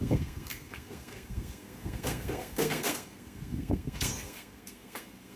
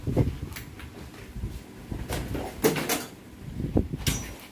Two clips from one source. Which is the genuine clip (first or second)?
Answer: second